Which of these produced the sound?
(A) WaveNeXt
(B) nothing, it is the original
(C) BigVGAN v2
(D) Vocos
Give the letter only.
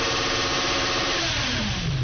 C